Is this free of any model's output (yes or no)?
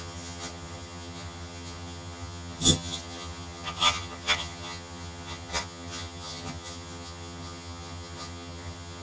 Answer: no